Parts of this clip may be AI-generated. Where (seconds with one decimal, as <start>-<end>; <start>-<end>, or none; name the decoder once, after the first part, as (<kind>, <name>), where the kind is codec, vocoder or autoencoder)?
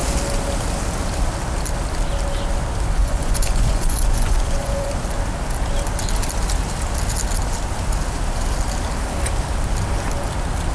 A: 3.0-4.9 (vocoder, Vocos)